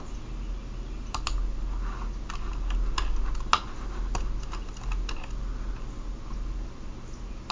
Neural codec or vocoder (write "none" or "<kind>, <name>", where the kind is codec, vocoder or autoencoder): none